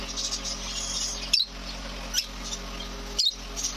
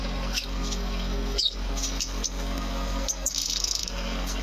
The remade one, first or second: second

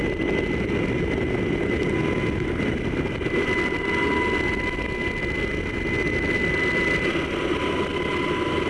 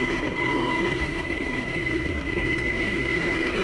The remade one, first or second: second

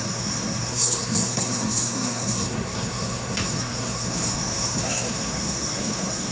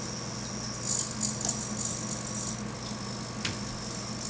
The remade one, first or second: first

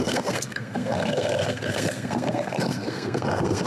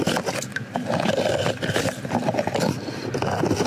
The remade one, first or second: first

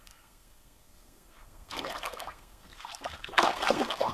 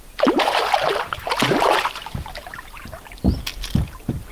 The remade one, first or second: first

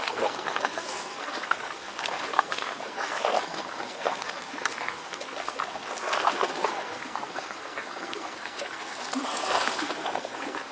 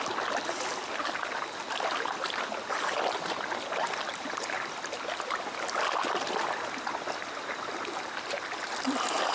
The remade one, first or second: first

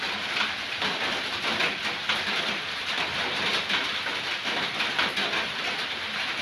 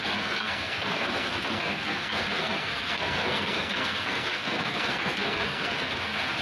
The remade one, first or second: second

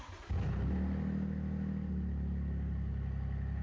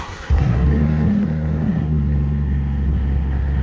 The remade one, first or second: second